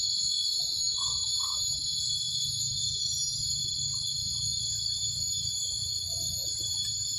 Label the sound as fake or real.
real